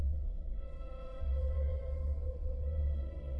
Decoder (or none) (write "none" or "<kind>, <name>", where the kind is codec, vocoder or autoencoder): vocoder, WaveNeXt